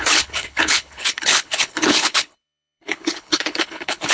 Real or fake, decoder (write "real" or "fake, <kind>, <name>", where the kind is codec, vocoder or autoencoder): fake, codec, HILCodec